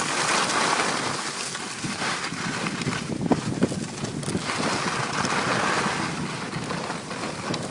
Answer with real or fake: real